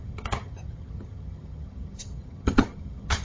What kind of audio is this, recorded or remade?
remade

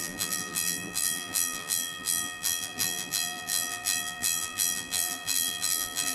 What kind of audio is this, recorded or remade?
remade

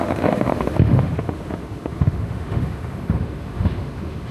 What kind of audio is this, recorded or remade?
remade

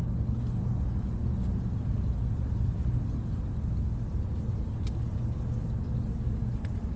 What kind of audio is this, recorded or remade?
recorded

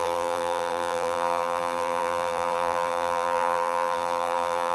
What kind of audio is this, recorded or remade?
remade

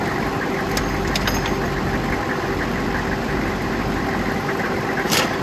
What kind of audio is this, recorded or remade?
recorded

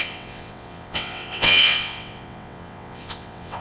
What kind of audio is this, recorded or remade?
remade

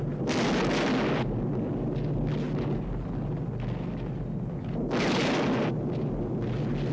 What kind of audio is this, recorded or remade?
recorded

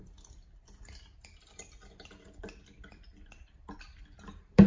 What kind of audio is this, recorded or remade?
recorded